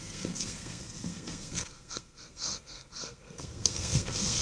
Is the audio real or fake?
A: fake